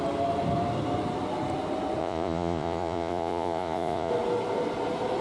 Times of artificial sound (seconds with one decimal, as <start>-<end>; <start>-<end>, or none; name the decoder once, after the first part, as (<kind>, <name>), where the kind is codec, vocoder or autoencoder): 2.0-4.1 (vocoder, Vocos)